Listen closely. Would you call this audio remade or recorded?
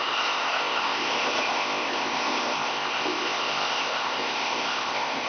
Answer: remade